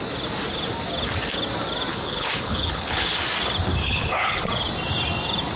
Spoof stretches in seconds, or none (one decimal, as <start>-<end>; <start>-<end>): 1.9-3.2; 3.8-4.4